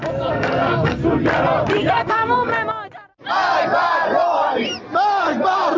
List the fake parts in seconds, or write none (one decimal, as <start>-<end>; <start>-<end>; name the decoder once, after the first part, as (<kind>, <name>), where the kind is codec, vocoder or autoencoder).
0.0-1.0 (codec, SNAC); 1.9-2.5